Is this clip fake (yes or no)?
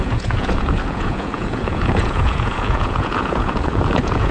yes